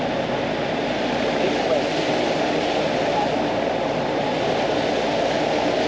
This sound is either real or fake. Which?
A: real